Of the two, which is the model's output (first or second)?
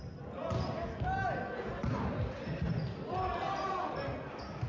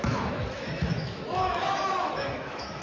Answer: second